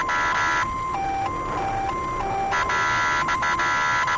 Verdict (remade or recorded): recorded